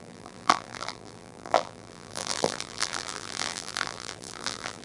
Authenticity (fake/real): fake